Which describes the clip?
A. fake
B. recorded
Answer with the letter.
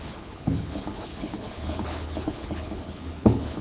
A